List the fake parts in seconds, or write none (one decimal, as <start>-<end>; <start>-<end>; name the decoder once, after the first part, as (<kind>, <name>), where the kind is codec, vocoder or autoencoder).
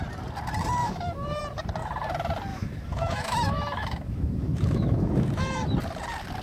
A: 0.8-1.4 (autoencoder, DAC-VAE); 2.5-5.7